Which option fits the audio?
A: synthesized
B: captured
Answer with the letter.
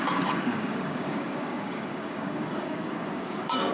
A